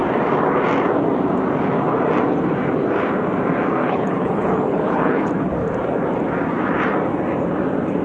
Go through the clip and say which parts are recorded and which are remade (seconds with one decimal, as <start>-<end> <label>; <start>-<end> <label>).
0.0-3.8 recorded; 3.8-5.3 remade; 5.3-8.0 recorded